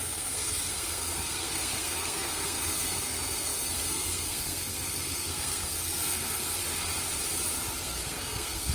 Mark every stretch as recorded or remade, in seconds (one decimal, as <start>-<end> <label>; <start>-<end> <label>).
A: 0.0-6.6 remade; 6.6-7.8 recorded; 7.8-8.7 remade